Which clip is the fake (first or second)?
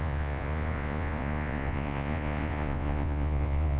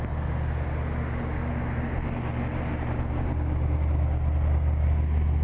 first